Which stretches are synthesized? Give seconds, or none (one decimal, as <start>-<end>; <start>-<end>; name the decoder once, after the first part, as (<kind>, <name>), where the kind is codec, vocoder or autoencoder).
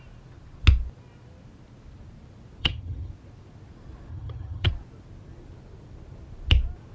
2.6-3.1 (vocoder, HiFi-GAN); 4.1-4.7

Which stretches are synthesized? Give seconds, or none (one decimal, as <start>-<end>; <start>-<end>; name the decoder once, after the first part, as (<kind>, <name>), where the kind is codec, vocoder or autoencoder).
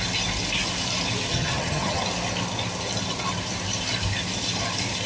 1.3-2.0 (vocoder, HiFi-GAN)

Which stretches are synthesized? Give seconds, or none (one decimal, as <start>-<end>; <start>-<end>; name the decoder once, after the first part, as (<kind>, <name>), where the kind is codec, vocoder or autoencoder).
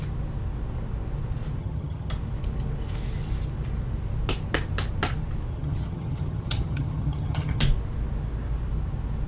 1.6-2.1 (vocoder, HiFi-GAN); 5.5-7.6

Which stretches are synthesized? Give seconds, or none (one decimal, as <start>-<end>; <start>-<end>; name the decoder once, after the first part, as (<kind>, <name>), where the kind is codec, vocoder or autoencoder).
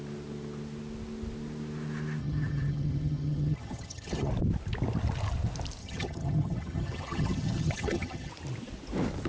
2.2-4.3 (vocoder, HiFi-GAN); 5.8-8.3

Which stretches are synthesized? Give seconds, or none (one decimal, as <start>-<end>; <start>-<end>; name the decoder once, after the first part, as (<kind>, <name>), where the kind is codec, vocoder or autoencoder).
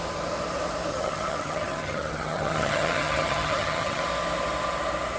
0.9-4.0 (vocoder, HiFi-GAN)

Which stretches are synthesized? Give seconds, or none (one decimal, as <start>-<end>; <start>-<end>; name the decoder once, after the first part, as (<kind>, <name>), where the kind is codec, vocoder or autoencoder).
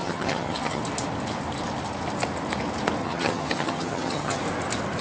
0.0-0.8 (vocoder, HiFi-GAN); 3.0-4.4